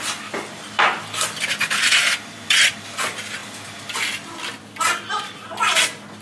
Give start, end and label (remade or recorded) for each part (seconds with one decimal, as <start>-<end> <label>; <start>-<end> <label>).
0.0-6.2 recorded